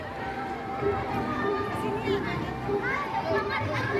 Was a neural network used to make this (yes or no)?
yes